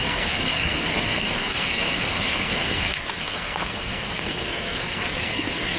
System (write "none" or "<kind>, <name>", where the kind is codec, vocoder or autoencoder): codec, SNAC